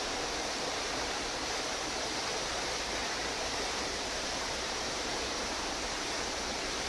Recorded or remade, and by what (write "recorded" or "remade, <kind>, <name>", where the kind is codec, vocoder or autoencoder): remade, vocoder, BigVGAN v2